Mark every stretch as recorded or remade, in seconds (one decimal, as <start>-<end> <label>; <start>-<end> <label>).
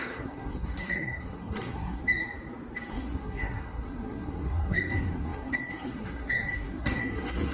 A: 0.0-2.0 remade; 2.0-2.9 recorded; 2.9-7.5 remade